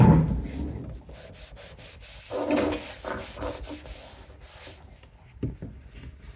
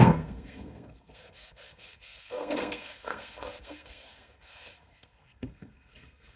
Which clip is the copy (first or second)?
second